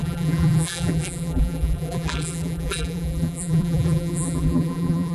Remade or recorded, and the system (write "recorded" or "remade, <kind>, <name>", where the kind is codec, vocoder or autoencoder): remade, vocoder, BigVGAN v2